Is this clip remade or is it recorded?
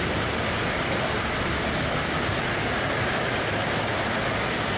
recorded